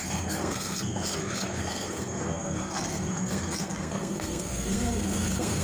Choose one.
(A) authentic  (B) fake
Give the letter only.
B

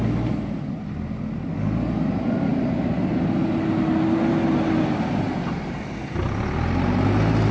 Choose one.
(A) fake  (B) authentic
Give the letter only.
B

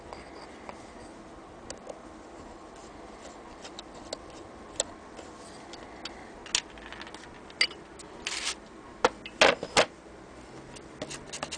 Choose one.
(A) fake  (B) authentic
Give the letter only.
B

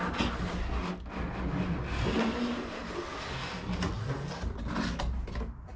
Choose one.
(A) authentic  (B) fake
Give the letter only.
A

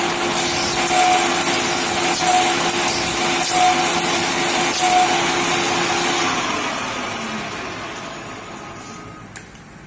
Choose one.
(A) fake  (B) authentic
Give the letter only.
B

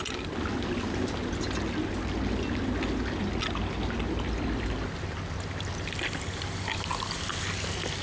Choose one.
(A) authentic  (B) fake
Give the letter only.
A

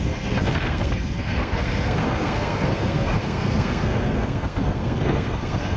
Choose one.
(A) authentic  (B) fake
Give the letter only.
B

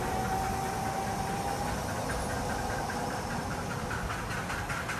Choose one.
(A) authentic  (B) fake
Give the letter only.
A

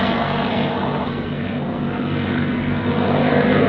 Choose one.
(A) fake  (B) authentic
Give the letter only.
A